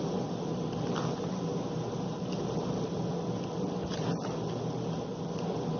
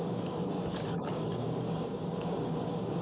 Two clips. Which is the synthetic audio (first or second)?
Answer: second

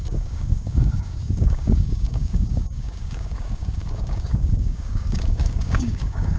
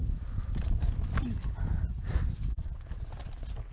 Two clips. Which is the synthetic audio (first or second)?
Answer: first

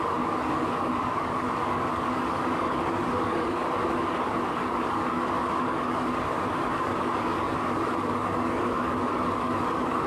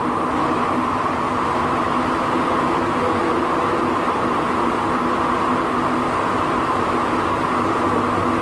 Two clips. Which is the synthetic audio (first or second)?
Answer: first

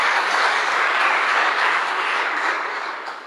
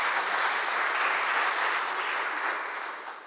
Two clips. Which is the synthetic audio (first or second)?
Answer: first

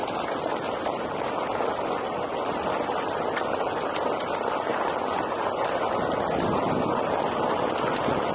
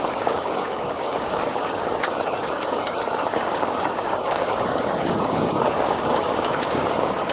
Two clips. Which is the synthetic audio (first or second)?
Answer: second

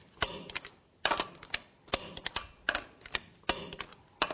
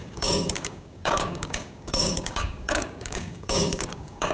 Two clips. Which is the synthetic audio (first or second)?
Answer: second